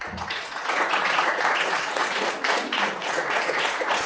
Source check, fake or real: fake